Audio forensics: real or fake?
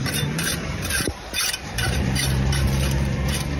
fake